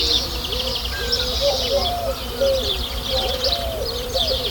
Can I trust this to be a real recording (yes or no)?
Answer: no